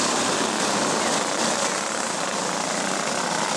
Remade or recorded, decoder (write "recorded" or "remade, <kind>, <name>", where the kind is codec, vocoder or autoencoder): recorded